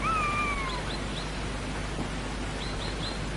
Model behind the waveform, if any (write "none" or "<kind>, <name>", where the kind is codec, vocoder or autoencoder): none